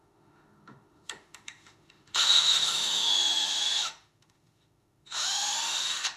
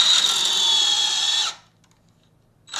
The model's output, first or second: first